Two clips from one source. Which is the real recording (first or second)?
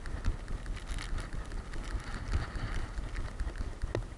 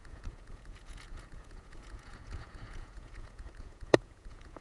first